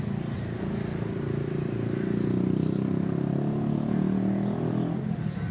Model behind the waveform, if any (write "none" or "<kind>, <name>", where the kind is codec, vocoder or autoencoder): none